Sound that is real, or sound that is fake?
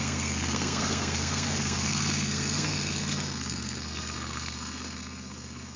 fake